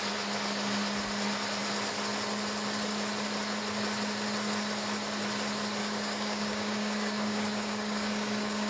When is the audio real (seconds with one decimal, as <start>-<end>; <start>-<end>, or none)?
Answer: 0.0-5.8